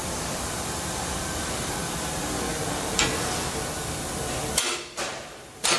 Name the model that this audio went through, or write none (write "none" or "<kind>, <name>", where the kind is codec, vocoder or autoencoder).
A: vocoder, BigVGAN v2